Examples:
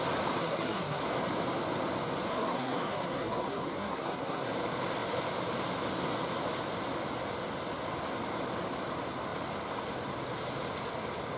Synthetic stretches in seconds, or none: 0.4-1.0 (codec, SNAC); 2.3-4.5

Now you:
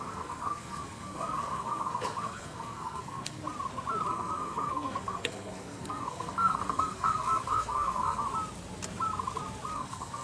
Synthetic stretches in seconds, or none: 0.0-3.4 (codec, SNAC); 4.1-8.3; 9.7-10.2

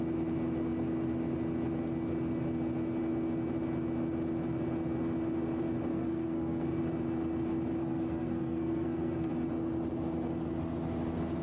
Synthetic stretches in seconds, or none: 5.9-6.8 (codec, SNAC); 7.8-9.3

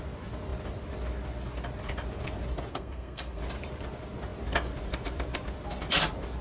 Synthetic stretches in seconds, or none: 2.7-3.4 (codec, SNAC)

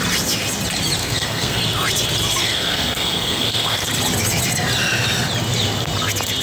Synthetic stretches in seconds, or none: 1.0-1.6 (codec, SNAC); 2.4-3.9

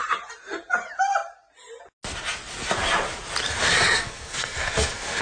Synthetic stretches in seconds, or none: 4.0-5.2 (codec, SNAC)